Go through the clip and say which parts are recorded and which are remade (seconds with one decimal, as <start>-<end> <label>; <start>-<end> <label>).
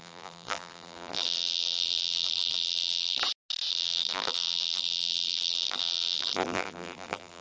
0.0-3.2 remade; 3.2-3.7 recorded; 3.7-7.4 remade